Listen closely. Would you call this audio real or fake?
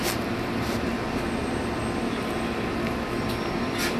real